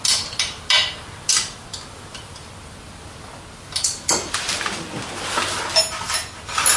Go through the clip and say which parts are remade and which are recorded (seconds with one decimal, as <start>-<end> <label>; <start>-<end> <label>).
0.0-6.8 recorded